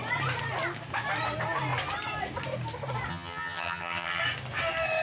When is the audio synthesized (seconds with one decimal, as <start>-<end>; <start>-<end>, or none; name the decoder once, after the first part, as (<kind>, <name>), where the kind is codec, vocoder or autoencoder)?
3.1-4.2 (vocoder, HiFi-GAN)